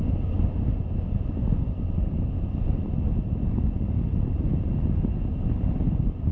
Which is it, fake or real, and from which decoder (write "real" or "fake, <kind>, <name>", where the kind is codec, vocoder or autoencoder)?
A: real